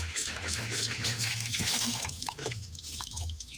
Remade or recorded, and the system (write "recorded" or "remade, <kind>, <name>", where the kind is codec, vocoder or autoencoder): remade, autoencoder, DAC-VAE